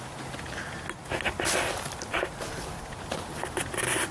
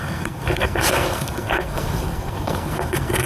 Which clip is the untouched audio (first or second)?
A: first